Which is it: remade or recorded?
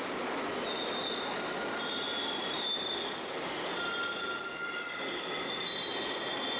recorded